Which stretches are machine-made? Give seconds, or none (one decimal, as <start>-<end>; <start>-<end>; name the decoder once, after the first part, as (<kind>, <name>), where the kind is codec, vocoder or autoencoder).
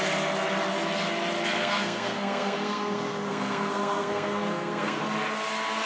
1.6-5.0 (codec, SNAC)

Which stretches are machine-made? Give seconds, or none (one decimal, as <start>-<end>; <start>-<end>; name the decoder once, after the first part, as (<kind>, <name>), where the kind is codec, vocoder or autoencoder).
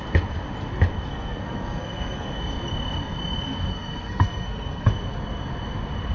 1.1-2.3 (codec, SNAC); 3.7-4.9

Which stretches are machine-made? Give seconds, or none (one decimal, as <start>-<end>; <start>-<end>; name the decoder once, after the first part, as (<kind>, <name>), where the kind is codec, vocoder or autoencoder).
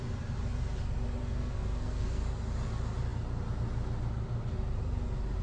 1.2-2.2 (codec, SNAC)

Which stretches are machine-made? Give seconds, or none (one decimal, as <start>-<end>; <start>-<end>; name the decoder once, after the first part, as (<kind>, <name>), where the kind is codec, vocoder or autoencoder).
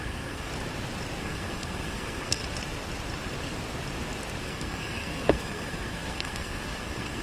0.0-0.5 (codec, SNAC); 1.2-2.4; 4.4-7.2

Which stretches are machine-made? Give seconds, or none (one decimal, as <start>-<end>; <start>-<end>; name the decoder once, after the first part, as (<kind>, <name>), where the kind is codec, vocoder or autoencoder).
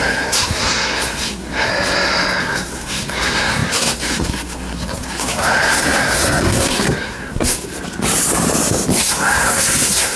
0.0-1.7 (codec, SNAC); 2.4-7.7; 9.0-10.2